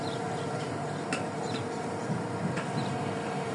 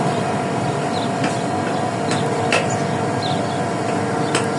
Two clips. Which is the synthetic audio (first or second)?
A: first